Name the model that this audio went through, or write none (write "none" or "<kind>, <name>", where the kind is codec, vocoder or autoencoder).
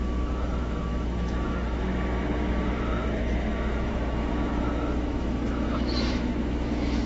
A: autoencoder, DAC-VAE